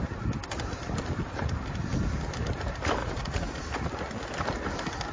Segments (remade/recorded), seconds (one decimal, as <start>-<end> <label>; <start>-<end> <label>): 0.0-3.0 recorded; 3.0-3.6 remade; 3.6-5.1 recorded

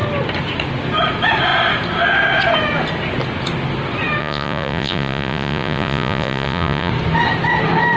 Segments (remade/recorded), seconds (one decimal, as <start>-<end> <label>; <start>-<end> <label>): 0.0-4.2 recorded; 4.2-6.9 remade; 6.9-8.0 recorded

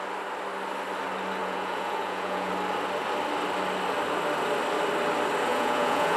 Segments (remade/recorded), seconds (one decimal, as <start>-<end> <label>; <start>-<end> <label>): 0.0-1.4 recorded; 1.4-2.5 remade; 2.5-5.5 recorded; 5.5-6.2 remade

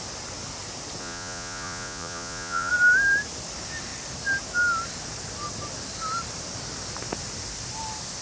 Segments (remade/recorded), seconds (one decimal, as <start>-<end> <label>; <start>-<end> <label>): 0.0-1.0 recorded; 1.0-2.7 remade; 2.7-8.2 recorded

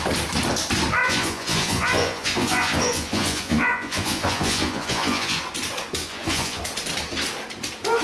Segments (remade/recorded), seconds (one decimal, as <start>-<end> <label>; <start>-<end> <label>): 0.0-1.0 recorded; 1.0-5.4 remade; 5.4-6.0 recorded; 6.0-6.6 remade; 6.6-8.0 recorded